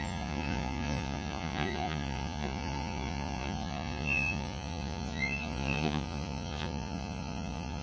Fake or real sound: fake